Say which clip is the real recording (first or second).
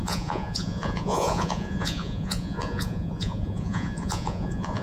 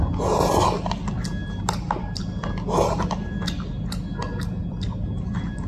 second